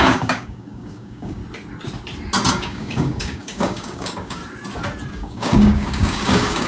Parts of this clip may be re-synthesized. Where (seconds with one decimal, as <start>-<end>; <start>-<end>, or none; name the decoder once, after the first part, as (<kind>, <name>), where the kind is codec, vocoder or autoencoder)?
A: 0.0-1.4 (codec, DAC); 2.5-4.4; 5.1-6.7